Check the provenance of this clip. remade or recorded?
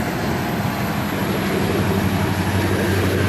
recorded